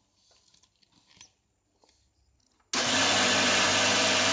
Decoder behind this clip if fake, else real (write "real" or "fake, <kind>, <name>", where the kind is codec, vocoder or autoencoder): real